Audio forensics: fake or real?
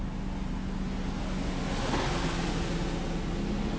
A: real